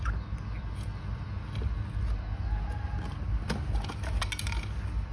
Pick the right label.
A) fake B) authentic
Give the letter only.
B